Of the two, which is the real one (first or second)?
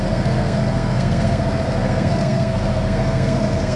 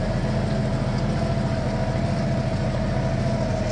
second